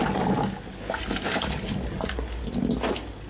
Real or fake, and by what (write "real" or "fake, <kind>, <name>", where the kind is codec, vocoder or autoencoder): real